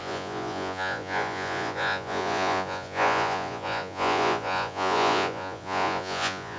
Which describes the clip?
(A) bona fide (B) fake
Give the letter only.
B